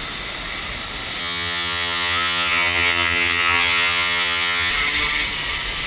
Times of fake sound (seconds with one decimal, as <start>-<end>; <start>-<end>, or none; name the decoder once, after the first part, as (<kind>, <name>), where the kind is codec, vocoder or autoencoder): 1.2-4.7 (vocoder, HiFi-GAN)